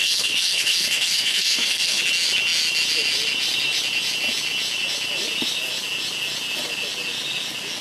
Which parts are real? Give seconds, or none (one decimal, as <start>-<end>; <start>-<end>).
2.0-7.8